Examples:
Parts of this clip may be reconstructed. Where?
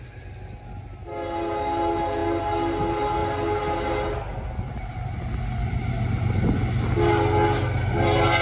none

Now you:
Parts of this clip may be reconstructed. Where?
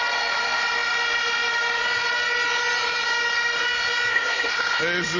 4.1-4.8 (codec, SNAC)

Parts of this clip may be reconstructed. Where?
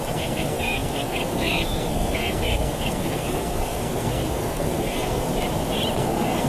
0.0-5.3 (codec, SNAC); 5.9-6.5